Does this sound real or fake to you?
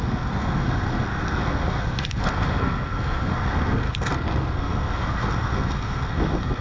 fake